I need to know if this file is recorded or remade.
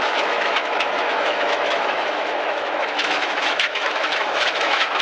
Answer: remade